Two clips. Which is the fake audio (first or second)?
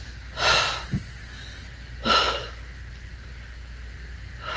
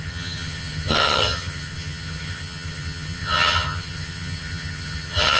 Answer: second